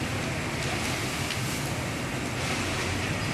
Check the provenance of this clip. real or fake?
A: real